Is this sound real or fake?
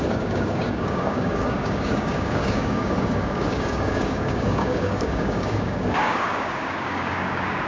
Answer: fake